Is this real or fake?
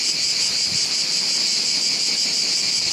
real